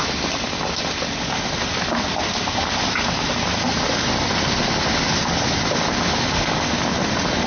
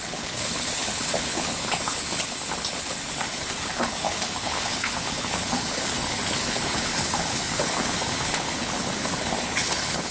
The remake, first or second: second